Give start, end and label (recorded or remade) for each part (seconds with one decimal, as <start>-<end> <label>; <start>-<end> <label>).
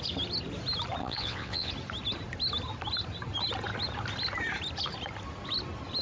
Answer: 0.0-1.0 recorded; 1.0-1.7 remade; 1.7-6.0 recorded